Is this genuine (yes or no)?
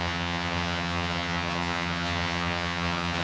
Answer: no